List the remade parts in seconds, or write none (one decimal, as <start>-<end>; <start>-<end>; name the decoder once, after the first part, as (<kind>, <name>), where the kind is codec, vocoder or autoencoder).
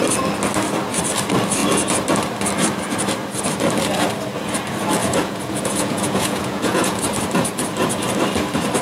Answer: 5.0-7.0 (vocoder, Vocos)